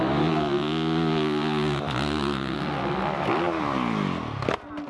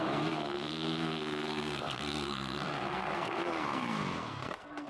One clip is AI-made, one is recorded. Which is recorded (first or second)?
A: first